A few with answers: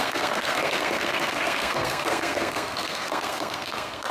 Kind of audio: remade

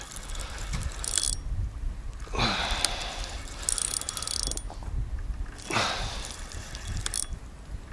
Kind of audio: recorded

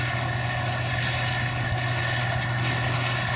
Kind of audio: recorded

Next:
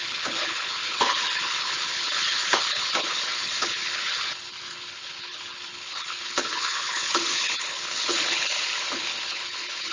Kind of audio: remade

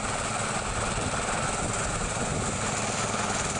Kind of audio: recorded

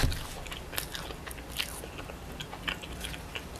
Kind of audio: recorded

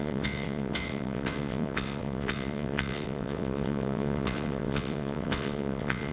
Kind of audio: remade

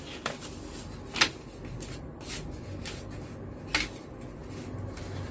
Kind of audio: recorded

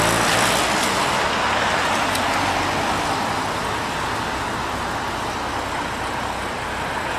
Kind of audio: recorded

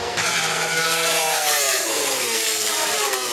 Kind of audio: remade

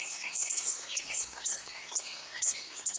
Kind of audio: remade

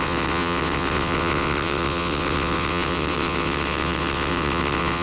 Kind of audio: remade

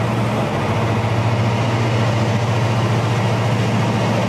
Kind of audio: recorded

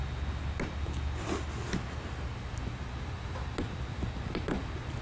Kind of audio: recorded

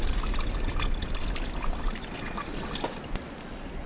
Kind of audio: recorded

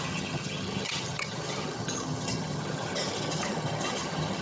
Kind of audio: remade